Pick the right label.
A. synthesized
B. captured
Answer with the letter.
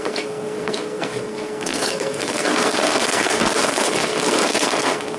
A